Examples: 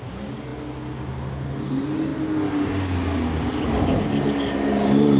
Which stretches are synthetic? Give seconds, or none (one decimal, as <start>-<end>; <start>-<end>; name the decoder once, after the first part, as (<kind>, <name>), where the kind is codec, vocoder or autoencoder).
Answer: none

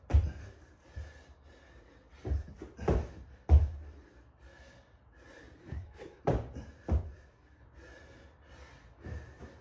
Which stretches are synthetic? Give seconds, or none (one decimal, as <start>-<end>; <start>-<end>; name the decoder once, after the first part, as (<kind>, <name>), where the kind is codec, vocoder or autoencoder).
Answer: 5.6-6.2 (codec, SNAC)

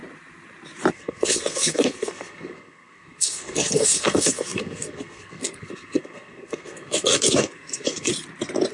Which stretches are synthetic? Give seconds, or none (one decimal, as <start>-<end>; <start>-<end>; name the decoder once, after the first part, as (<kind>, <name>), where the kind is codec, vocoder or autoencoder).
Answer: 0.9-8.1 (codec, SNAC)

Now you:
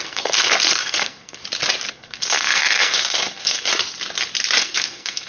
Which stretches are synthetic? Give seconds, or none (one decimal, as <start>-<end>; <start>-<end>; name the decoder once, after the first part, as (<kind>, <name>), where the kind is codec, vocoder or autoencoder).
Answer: 0.0-1.4 (codec, SNAC); 1.9-3.7; 4.6-5.3

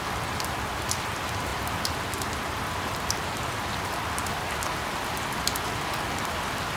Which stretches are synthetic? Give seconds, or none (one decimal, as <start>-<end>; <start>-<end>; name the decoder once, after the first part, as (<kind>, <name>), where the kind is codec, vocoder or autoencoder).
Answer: none

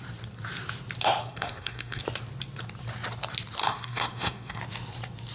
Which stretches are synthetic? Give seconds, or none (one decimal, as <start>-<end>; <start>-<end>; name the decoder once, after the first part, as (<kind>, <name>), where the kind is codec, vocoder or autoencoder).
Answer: 1.2-2.0 (codec, SNAC); 3.6-4.6

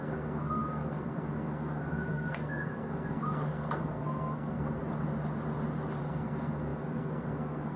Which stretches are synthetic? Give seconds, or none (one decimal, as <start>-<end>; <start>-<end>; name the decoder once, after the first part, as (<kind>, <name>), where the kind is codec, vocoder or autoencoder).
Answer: 0.0-4.8 (codec, SNAC); 6.0-7.8

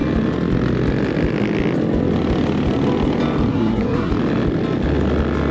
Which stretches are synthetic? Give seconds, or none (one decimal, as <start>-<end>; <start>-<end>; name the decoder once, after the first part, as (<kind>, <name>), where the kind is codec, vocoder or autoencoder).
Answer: 3.5-4.1 (codec, SNAC)